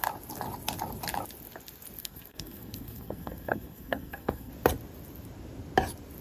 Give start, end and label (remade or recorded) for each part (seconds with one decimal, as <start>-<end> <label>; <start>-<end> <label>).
0.0-2.0 recorded; 2.0-4.5 remade; 4.5-6.2 recorded